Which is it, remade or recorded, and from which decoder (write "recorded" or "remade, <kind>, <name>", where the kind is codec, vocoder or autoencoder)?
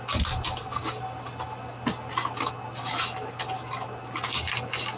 recorded